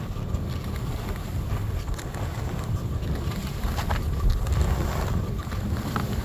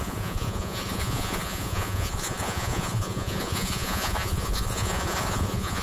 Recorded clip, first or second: first